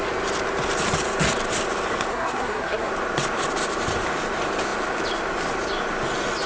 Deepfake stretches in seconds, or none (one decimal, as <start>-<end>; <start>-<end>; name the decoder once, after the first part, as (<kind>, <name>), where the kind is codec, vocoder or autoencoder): 2.1-2.9 (codec, SNAC)